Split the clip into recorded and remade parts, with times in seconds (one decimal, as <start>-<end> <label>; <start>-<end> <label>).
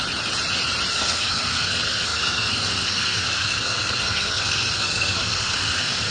0.0-0.9 recorded; 0.9-6.1 remade